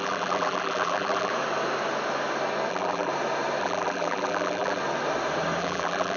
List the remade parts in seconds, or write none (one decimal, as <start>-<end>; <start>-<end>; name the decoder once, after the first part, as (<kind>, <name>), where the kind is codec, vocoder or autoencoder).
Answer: 0.0-1.3 (vocoder, BigVGAN v2); 2.7-3.1; 3.6-4.8; 5.6-6.2